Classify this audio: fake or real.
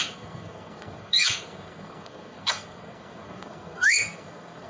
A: fake